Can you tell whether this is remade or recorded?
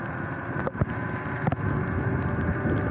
recorded